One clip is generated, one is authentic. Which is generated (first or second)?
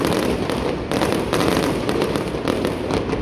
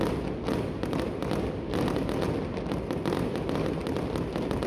first